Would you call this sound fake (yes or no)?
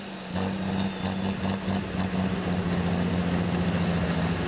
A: no